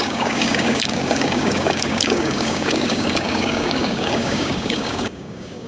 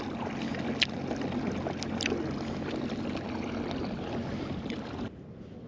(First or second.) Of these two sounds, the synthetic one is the first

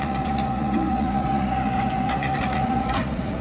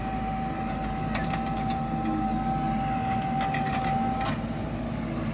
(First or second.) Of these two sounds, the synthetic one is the first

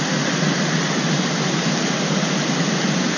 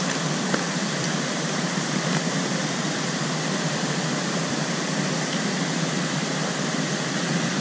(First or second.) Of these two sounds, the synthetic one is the second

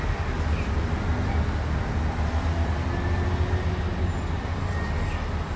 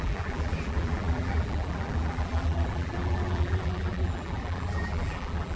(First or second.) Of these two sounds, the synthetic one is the second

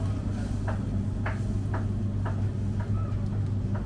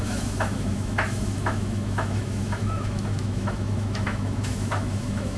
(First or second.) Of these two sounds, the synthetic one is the second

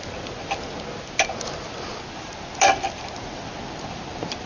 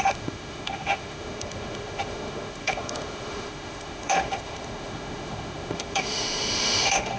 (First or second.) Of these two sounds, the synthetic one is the second